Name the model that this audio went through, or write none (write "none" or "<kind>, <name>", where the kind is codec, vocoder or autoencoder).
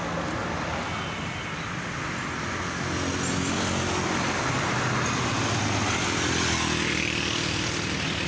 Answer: none